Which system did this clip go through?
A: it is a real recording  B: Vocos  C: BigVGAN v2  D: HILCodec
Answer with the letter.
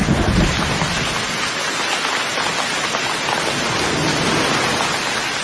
A